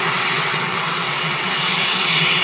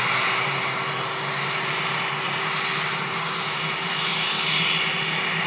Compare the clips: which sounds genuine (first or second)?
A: second